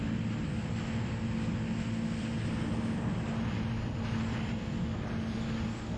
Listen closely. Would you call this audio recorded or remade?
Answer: recorded